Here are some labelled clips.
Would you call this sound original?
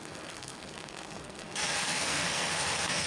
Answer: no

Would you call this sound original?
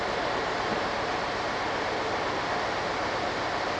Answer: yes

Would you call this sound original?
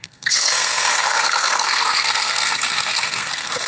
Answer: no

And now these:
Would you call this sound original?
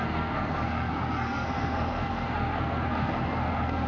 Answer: no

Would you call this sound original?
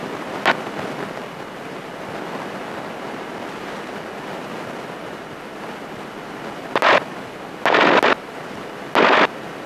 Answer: yes